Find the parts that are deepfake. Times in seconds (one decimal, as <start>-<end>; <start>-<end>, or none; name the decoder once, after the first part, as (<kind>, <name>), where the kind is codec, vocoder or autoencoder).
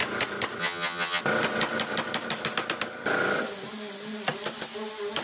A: 0.6-1.2 (vocoder, HiFi-GAN)